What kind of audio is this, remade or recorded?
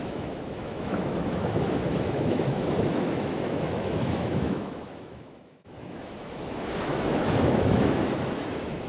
remade